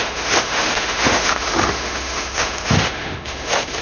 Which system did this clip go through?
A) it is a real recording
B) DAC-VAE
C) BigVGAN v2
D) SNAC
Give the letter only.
B